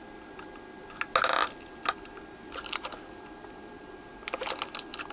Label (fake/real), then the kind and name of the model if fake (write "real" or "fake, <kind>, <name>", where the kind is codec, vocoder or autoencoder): real